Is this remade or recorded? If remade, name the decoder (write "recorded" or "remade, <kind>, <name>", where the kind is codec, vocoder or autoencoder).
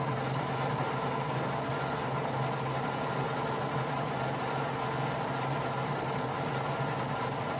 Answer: recorded